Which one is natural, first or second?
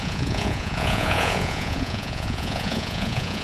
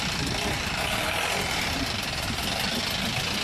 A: second